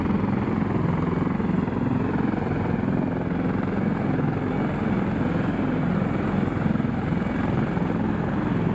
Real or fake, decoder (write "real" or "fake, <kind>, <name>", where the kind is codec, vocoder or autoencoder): real